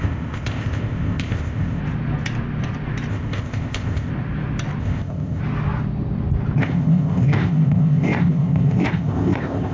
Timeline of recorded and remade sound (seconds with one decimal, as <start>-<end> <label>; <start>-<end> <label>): 0.0-1.8 remade; 1.8-3.1 recorded; 3.1-4.1 remade; 4.1-4.8 recorded; 4.8-5.4 remade; 5.4-6.6 recorded; 6.6-9.7 remade